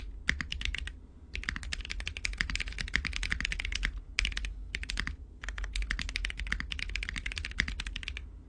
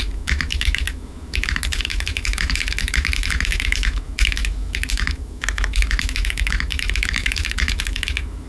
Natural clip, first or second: first